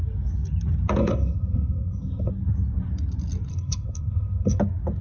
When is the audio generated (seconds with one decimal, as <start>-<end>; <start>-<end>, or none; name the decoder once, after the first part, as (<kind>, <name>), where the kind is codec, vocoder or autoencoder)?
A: 1.0-2.3 (codec, SNAC); 3.5-4.6